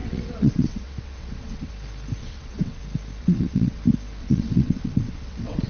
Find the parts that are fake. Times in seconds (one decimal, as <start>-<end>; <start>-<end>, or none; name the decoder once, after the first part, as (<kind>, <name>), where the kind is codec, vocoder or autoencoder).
0.0-1.7 (vocoder, WaveNeXt); 2.2-2.8; 3.2-3.8; 4.2-5.7